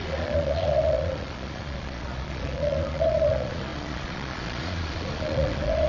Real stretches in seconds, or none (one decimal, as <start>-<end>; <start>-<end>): none